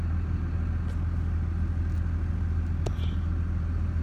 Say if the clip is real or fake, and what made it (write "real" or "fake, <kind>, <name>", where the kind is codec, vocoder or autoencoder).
real